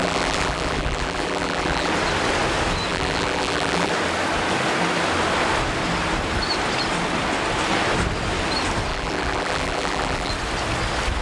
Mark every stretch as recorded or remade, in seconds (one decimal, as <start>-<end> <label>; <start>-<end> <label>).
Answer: 0.0-1.9 remade; 1.9-2.9 recorded; 2.9-3.9 remade; 3.9-8.9 recorded; 8.9-10.3 remade; 10.3-11.2 recorded